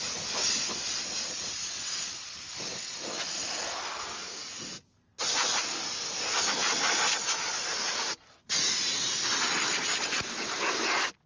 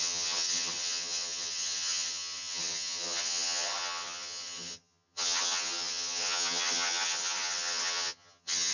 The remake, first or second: second